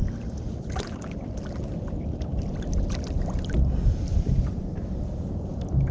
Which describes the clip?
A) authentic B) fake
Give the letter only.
A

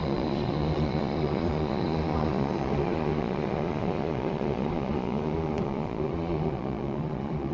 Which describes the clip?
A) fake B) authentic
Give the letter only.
A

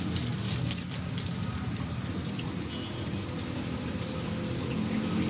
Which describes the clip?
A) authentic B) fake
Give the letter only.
A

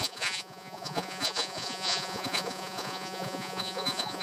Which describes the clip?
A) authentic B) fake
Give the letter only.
B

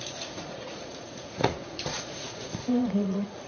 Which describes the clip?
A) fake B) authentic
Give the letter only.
A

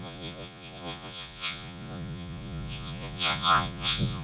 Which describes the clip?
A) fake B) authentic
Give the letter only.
A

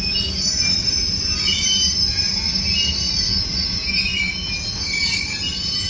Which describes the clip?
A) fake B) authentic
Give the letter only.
B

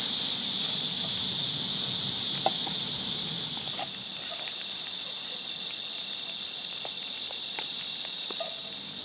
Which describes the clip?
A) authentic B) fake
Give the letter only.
A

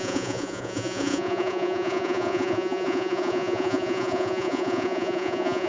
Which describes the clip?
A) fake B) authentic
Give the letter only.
A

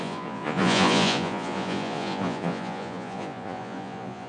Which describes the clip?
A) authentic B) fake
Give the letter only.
B